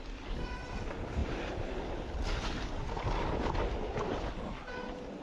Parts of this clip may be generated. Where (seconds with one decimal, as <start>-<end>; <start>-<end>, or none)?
none